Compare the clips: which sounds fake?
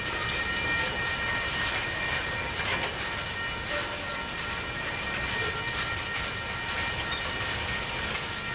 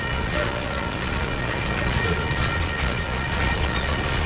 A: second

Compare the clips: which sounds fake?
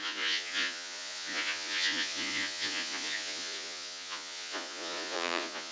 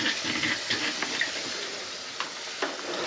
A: first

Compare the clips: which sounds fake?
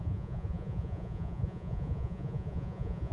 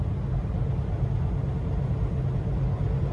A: first